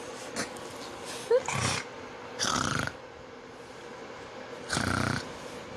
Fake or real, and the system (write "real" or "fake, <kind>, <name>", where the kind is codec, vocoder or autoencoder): real